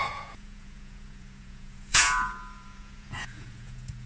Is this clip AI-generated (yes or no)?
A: yes